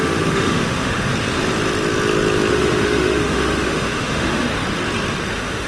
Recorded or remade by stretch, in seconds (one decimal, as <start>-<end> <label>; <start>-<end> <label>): 0.0-1.1 remade; 1.1-2.5 recorded; 2.5-4.5 remade; 4.5-5.3 recorded; 5.3-5.7 remade

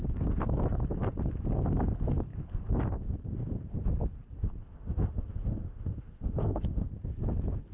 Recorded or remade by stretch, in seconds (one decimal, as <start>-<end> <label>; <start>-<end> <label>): 0.0-4.6 recorded; 4.6-6.9 remade; 6.9-7.7 recorded